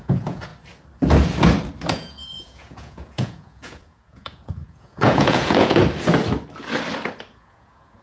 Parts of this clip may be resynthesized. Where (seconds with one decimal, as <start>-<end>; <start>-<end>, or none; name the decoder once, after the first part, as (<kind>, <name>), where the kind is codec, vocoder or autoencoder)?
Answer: 0.0-0.5 (vocoder, Vocos); 1.9-5.8; 7.3-8.0